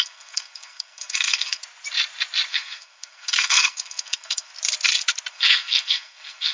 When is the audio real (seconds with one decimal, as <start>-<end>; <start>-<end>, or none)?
1.6-2.5; 4.5-5.3